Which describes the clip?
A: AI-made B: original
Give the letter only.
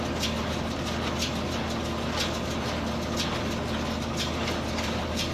B